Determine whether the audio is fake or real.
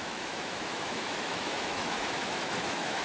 fake